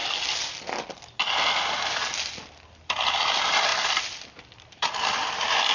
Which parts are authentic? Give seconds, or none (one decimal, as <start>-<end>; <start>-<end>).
0.0-3.7; 4.9-5.7